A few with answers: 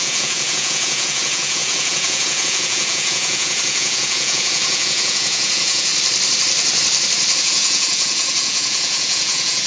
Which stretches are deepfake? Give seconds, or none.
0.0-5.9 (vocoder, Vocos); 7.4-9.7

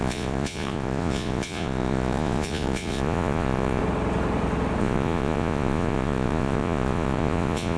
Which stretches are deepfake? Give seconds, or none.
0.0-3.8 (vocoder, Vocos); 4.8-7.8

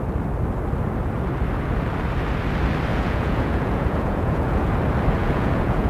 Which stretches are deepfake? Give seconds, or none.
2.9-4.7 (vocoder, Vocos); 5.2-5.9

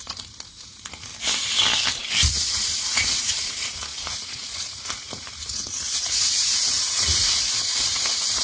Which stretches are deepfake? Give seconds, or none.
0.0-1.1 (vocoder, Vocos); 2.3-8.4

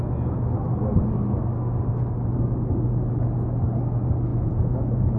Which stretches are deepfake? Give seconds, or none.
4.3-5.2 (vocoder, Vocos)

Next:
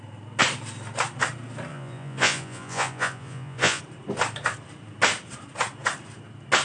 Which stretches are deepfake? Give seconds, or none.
1.7-3.8 (vocoder, Vocos)